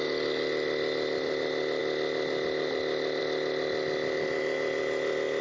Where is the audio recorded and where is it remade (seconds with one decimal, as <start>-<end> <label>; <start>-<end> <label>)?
0.0-5.4 recorded